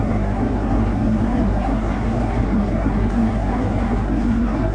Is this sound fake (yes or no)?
yes